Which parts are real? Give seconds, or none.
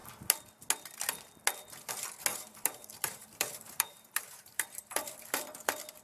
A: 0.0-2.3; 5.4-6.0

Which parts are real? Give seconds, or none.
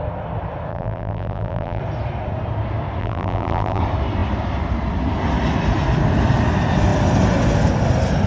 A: 0.0-0.7; 1.8-3.0; 3.8-8.3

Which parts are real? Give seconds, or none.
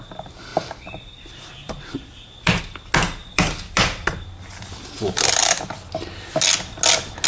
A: 0.0-0.5; 2.6-3.2; 5.6-7.3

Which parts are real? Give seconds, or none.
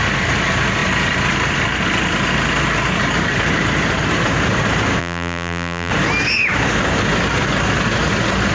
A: 0.0-5.0; 5.9-8.5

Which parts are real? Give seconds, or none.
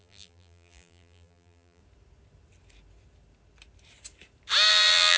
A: 1.8-4.7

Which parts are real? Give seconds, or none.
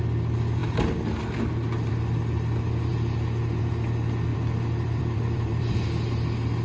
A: 0.0-4.3; 5.7-6.6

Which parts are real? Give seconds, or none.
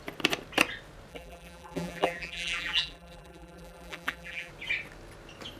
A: 0.0-1.1; 4.5-5.6